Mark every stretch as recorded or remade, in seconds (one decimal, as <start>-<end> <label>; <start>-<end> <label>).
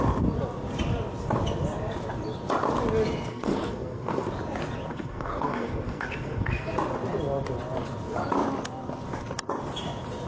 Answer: 0.0-3.3 recorded; 3.3-4.3 remade; 4.3-4.9 recorded; 4.9-6.7 remade; 6.7-10.3 recorded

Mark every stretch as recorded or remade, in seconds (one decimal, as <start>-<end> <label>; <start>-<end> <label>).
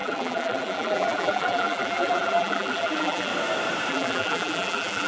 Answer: 0.0-3.3 remade; 3.3-3.9 recorded; 3.9-5.1 remade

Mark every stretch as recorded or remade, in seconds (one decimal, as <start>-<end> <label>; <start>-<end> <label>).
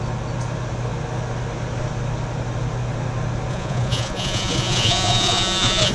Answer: 0.0-3.5 recorded; 3.5-5.9 remade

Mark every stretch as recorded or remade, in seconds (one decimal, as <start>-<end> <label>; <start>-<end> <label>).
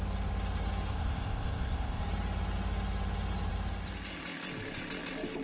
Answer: 0.0-0.9 recorded; 0.9-2.0 remade; 2.0-5.4 recorded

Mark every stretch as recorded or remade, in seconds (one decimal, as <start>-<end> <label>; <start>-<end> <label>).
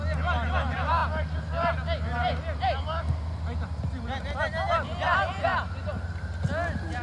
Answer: 0.0-7.0 recorded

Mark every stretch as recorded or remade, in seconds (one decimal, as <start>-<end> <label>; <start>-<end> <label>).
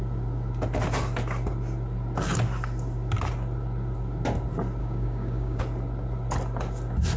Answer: 0.0-4.8 recorded; 4.8-5.6 remade; 5.6-7.2 recorded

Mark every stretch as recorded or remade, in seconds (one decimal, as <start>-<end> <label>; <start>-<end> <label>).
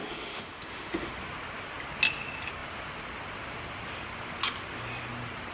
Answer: 0.0-1.1 remade; 1.1-5.5 recorded